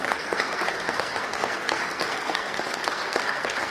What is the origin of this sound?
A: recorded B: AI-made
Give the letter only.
B